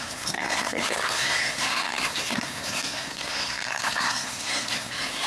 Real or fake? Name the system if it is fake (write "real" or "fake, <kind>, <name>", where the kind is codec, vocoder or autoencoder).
fake, codec, SNAC